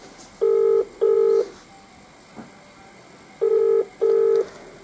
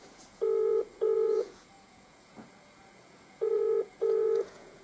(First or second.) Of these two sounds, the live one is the first